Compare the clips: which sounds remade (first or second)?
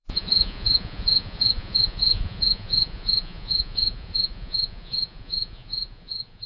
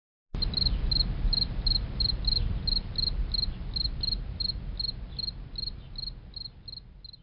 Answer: first